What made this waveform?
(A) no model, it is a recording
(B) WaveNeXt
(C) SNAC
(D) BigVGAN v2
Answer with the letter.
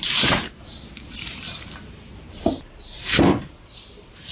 A